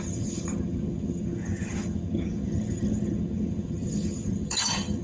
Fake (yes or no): yes